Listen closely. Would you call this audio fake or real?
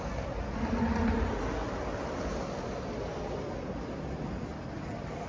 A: real